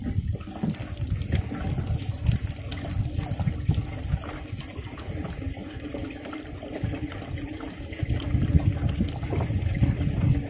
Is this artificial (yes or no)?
no